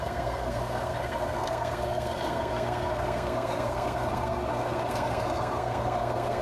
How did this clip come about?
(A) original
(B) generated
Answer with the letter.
B